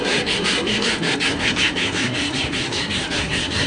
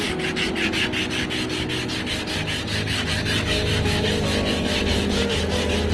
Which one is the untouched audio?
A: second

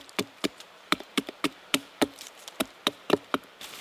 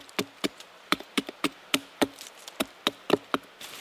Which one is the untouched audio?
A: second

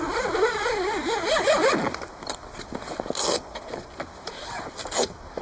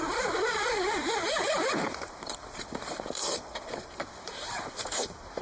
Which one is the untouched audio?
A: first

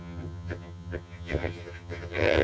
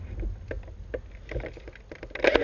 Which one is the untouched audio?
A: second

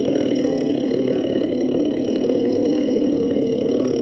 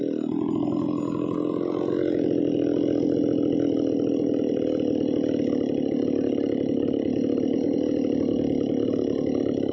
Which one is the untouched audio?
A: second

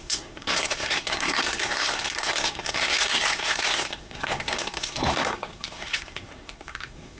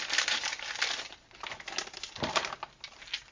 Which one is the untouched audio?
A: second